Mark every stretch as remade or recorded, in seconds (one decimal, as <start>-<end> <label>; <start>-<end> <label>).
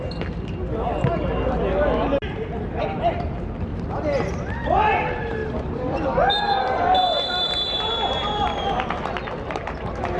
0.0-5.4 recorded; 5.4-7.8 remade; 7.8-10.2 recorded